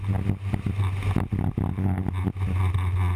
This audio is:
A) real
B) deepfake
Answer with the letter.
A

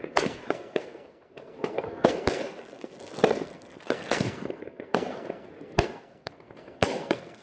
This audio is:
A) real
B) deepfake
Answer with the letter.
B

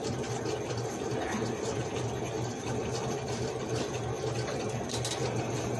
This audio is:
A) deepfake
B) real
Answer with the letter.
B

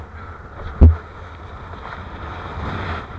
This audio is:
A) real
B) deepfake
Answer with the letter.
A